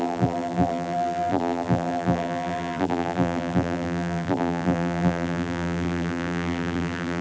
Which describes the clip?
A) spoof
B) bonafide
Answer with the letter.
A